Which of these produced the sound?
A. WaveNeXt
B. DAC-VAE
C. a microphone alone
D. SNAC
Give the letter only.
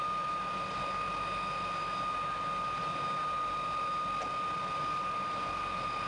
C